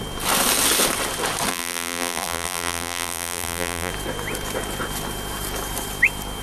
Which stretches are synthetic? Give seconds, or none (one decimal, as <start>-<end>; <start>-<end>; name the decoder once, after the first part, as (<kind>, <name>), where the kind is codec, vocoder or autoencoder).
1.5-3.9 (vocoder, BigVGAN v2)